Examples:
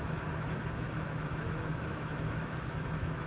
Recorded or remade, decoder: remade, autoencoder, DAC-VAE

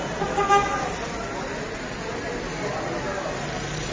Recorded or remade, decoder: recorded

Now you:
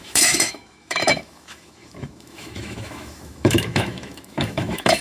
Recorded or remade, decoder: remade, autoencoder, DAC-VAE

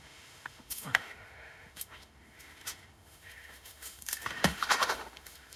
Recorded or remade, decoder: remade, autoencoder, DAC-VAE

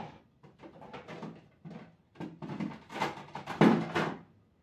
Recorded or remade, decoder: recorded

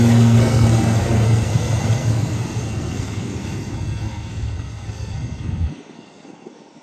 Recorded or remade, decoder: remade, codec, SNAC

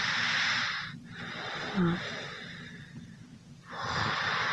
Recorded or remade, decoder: recorded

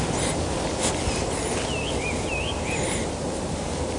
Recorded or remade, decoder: recorded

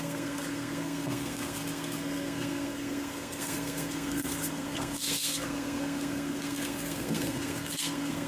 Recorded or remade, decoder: remade, codec, SNAC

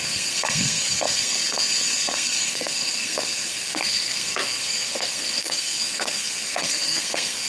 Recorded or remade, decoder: remade, codec, SNAC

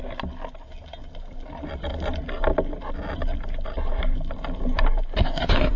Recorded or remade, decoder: recorded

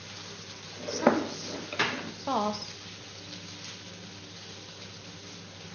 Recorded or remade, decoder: recorded